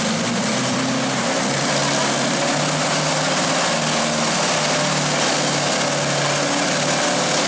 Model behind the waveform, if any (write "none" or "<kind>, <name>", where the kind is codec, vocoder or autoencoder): none